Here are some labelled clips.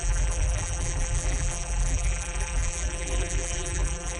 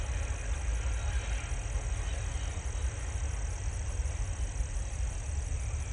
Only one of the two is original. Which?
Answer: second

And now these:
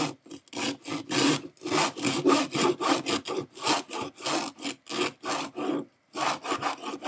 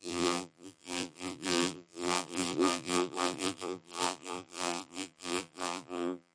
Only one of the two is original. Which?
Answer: first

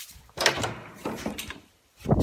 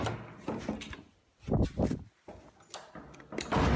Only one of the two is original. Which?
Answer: second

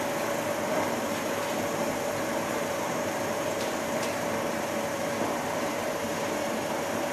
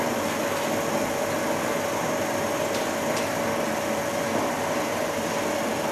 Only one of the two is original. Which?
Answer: second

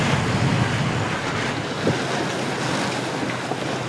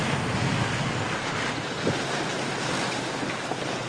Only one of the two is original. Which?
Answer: first